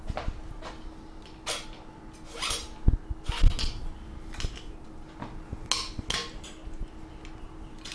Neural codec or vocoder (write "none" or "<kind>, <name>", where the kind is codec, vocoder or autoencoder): none